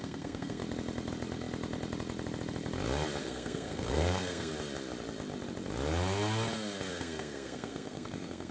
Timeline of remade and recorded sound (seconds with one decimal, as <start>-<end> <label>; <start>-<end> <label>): 0.0-0.6 remade; 0.6-3.2 recorded; 3.2-4.5 remade; 4.5-6.9 recorded; 6.9-8.5 remade